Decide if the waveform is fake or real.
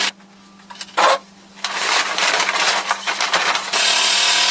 real